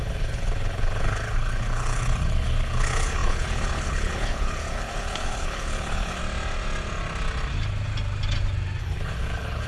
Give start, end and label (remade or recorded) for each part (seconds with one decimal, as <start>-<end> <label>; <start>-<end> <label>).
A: 0.0-6.2 remade; 6.2-8.8 recorded; 8.8-9.7 remade